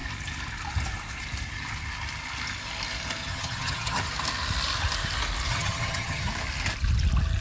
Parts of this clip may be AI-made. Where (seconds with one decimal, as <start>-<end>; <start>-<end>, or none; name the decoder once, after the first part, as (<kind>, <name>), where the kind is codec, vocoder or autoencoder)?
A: 3.2-4.0 (vocoder, HiFi-GAN); 5.5-6.3